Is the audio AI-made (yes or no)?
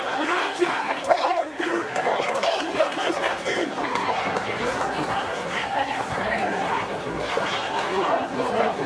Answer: yes